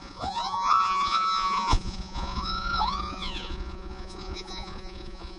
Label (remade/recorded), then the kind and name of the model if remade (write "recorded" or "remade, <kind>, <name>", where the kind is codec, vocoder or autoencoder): remade, vocoder, Vocos